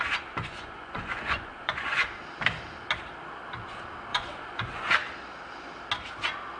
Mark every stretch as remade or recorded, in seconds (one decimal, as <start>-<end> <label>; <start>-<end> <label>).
0.0-0.4 recorded; 0.4-2.2 remade; 2.2-4.1 recorded; 4.1-4.9 remade; 4.9-6.6 recorded